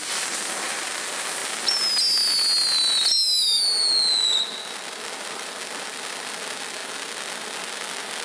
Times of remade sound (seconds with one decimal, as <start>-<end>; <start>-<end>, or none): none